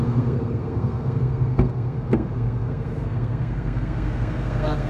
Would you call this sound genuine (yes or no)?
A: no